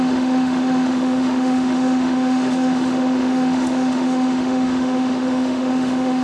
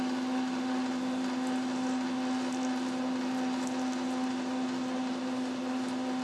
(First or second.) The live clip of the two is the second